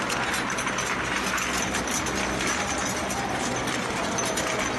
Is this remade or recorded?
recorded